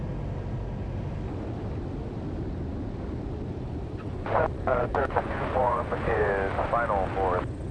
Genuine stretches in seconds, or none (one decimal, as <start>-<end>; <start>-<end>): 0.0-4.1; 6.3-7.7